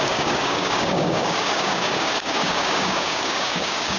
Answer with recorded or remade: remade